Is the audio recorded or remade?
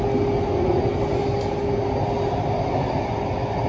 recorded